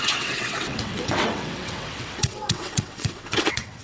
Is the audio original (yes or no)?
no